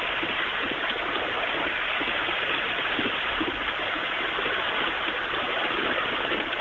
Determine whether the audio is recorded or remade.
recorded